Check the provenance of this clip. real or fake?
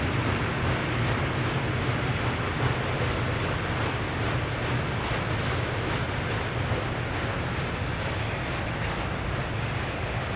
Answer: real